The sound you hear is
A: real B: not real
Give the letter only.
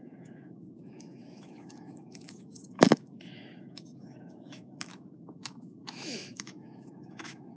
B